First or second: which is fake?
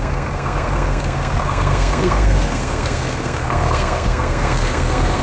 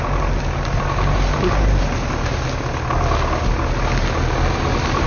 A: first